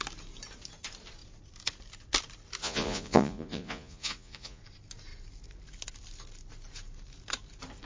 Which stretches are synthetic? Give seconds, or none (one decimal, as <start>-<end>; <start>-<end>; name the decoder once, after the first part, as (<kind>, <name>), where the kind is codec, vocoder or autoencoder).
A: 2.6-4.6 (vocoder, Vocos)